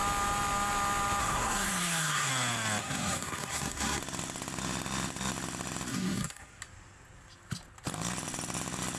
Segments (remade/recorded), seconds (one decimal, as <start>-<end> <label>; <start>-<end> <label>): 0.0-1.2 recorded; 1.2-2.3 remade; 2.3-2.8 recorded; 2.8-4.0 remade; 4.0-5.9 recorded; 5.9-6.6 remade; 6.6-9.0 recorded